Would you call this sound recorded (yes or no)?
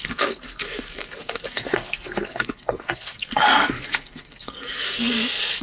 no